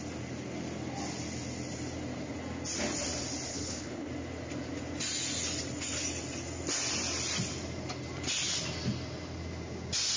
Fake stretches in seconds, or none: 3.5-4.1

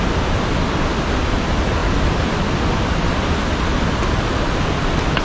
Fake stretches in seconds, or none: none